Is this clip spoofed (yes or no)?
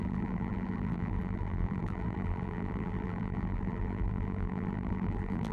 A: yes